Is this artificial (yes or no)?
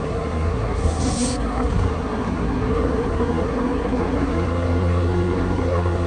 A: yes